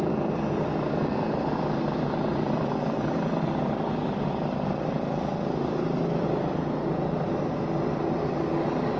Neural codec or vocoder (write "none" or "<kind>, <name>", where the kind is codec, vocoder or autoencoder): none